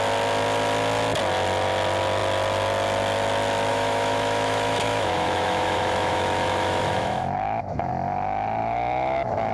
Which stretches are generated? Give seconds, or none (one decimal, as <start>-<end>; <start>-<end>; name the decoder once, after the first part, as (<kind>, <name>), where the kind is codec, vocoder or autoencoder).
3.7-7.9 (autoencoder, DAC-VAE); 8.6-9.5